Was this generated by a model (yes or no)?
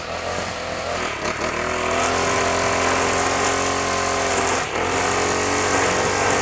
no